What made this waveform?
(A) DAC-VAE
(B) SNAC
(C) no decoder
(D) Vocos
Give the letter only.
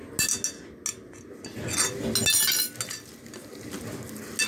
C